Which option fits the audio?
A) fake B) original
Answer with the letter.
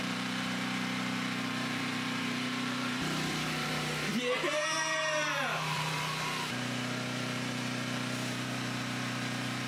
A